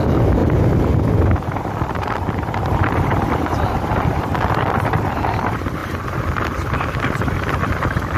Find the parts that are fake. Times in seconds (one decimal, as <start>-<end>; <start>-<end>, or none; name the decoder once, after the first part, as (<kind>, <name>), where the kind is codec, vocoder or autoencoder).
0.0-5.8 (vocoder, BigVGAN v2); 7.1-8.2